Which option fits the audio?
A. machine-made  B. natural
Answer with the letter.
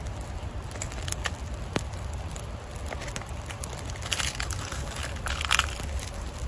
B